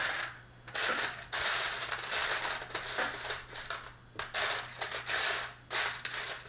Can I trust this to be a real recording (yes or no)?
yes